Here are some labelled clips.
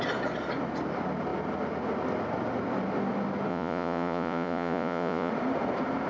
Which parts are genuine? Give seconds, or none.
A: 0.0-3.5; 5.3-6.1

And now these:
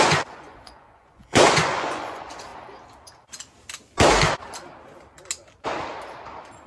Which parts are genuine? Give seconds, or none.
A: 2.5-6.7

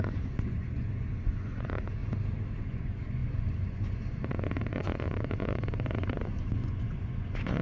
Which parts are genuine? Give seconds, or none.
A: 2.0-2.6

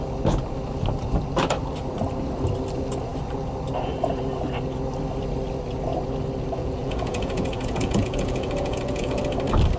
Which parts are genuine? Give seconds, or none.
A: 0.0-6.6; 9.2-9.8

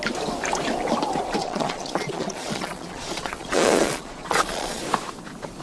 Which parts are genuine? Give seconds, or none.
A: 0.0-1.4; 4.8-5.6

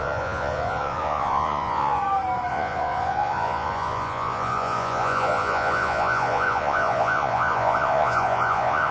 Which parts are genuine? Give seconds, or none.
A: 2.0-2.5

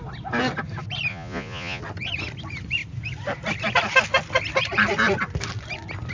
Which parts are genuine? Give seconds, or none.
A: 0.0-1.1; 1.8-6.1

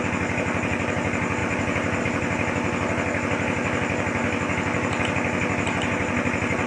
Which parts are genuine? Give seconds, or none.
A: 0.0-6.7